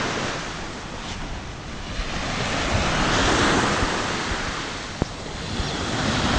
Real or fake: real